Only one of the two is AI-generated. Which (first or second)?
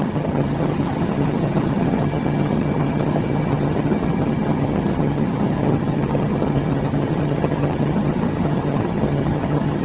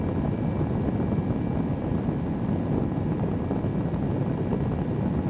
first